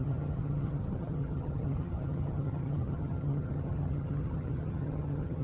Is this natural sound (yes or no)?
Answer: no